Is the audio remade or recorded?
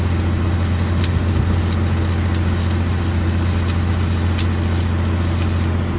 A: recorded